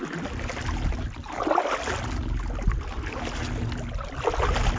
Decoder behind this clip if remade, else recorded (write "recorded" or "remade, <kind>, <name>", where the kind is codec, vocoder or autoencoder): recorded